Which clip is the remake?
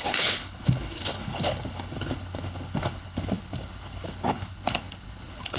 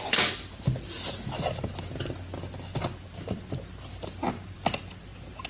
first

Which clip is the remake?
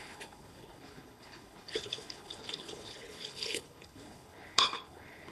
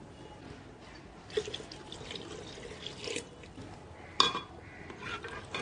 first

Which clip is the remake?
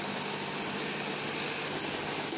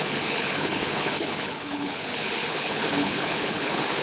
second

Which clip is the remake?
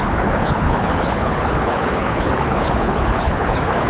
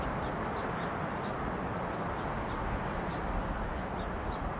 first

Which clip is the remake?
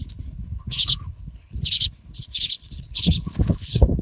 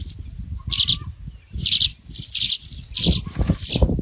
first